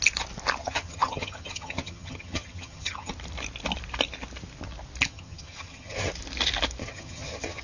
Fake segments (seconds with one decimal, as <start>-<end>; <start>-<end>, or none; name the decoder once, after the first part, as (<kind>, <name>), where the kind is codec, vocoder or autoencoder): 0.6-3.1 (vocoder, HiFi-GAN); 5.1-6.1; 6.8-7.6